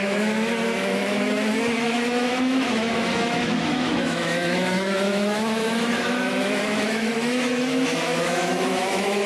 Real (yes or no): no